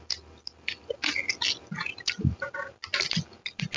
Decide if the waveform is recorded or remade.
recorded